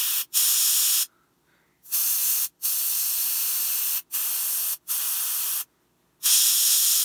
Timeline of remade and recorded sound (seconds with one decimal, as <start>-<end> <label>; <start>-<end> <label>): 0.0-7.0 recorded